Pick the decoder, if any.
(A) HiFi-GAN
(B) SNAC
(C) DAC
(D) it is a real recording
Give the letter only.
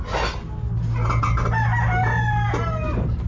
D